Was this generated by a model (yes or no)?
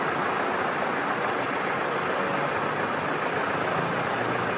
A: no